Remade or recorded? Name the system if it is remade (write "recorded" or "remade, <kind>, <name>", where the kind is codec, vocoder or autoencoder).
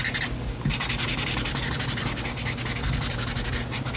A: recorded